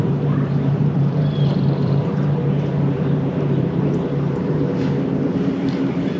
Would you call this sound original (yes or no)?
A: no